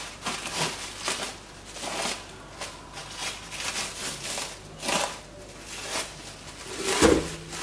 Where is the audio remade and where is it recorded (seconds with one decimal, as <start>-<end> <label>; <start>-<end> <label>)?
0.0-7.6 recorded